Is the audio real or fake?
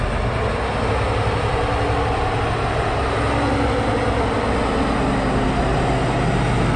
real